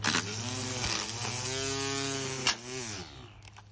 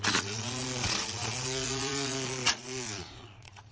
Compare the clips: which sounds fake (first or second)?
second